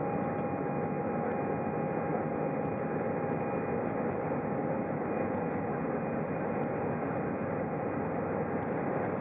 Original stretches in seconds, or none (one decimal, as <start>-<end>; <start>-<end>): 0.0-9.2